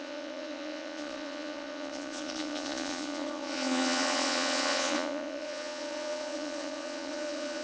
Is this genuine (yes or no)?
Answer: no